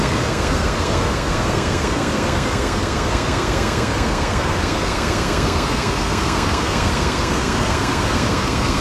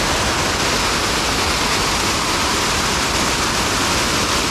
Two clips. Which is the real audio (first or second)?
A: second